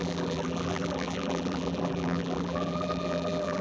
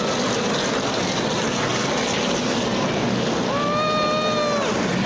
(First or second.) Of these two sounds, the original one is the second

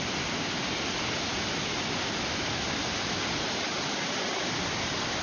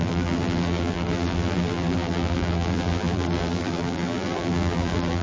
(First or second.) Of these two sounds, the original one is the first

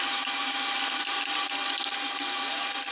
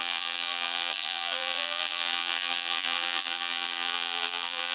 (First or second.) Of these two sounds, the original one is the first